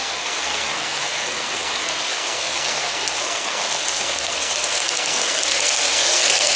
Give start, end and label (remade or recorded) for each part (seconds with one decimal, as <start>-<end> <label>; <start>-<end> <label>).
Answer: 0.0-6.6 remade